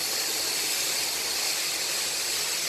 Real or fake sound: real